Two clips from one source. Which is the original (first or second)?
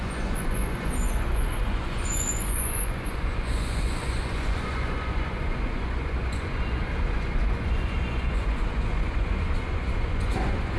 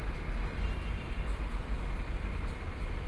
second